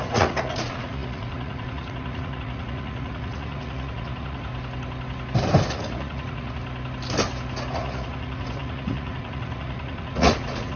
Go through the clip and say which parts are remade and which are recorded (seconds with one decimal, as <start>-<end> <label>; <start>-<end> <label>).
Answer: 0.0-4.5 remade; 4.5-5.7 recorded; 5.7-6.6 remade; 6.6-7.7 recorded; 7.7-10.8 remade